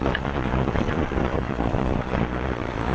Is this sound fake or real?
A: fake